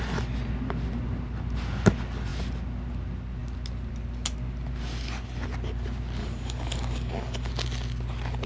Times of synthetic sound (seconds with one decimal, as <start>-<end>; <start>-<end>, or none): 6.2-7.5